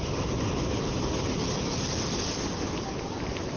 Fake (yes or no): no